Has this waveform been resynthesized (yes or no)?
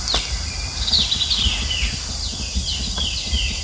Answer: no